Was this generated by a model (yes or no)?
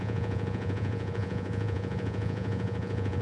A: yes